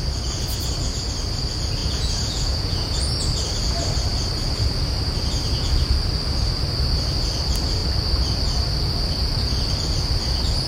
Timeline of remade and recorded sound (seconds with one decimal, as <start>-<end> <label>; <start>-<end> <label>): 0.0-1.8 recorded; 1.8-3.0 remade; 3.0-10.7 recorded